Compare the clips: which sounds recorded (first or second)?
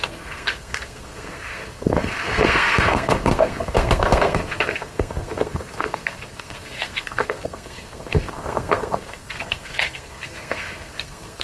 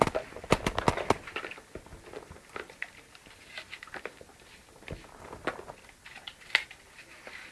second